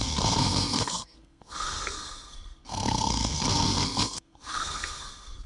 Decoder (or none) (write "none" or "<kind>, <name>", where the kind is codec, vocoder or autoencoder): codec, SNAC